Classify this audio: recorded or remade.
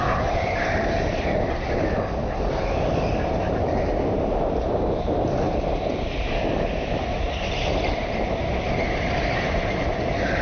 recorded